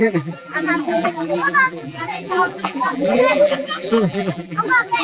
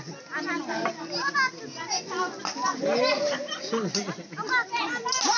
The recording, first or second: second